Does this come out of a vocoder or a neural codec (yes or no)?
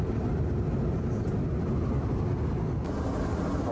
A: no